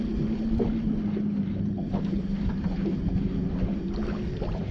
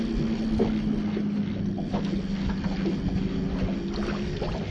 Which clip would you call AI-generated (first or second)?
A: first